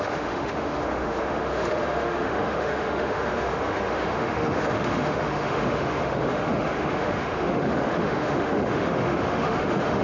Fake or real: fake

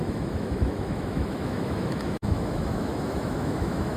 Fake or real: fake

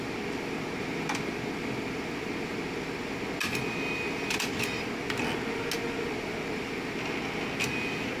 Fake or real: real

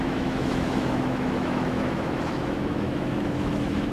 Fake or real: fake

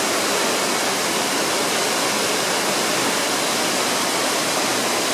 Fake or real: real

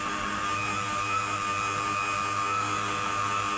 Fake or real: fake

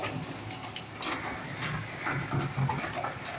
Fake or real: real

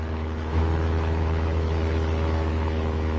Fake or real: fake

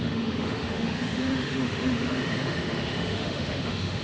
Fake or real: fake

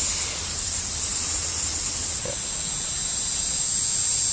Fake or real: real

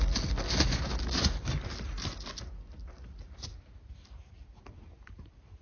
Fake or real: real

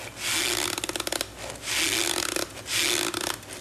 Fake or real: real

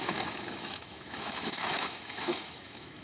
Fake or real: fake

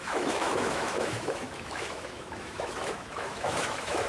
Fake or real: fake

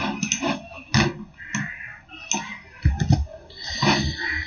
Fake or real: real